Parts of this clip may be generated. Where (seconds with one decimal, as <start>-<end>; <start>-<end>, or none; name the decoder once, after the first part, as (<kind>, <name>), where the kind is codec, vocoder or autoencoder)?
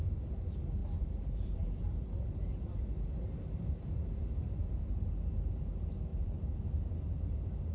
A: 0.8-4.8 (vocoder, BigVGAN v2); 6.1-7.2